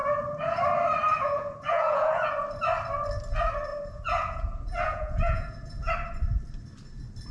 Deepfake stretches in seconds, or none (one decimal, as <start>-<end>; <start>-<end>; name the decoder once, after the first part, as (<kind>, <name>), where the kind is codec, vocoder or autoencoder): 0.0-0.6 (vocoder, Vocos); 1.1-2.3; 3.7-5.9